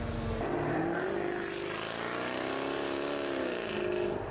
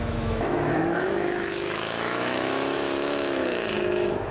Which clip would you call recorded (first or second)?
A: first